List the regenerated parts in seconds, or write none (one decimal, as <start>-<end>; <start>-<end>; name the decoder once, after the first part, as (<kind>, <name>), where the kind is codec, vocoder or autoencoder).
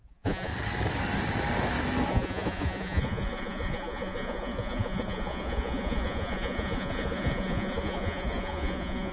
0.0-0.5 (vocoder, Vocos); 2.1-9.1